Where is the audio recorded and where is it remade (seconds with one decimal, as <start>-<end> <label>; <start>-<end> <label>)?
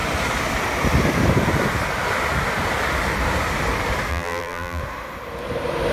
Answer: 0.0-4.1 recorded; 4.1-4.8 remade; 4.8-5.9 recorded